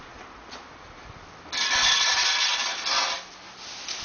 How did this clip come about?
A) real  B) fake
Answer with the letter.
A